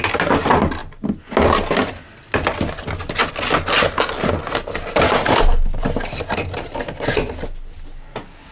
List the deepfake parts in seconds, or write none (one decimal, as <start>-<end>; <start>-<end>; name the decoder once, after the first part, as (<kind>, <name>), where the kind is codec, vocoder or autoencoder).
none